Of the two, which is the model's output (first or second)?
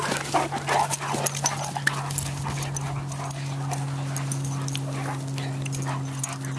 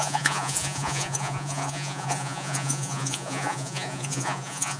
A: second